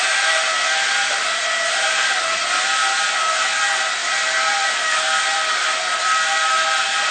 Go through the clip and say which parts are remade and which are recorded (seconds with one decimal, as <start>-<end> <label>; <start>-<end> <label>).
0.0-7.1 recorded